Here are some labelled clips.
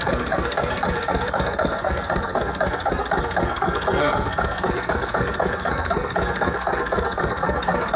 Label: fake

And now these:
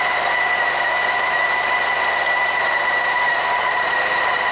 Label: fake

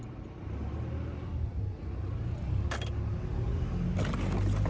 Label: real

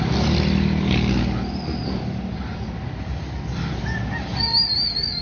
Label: real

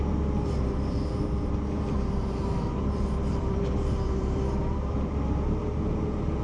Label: fake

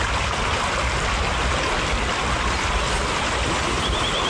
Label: real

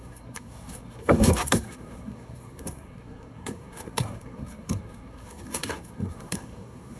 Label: fake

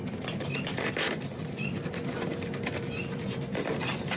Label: fake